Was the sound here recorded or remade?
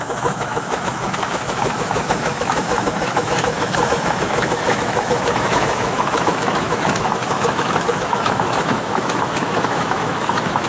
remade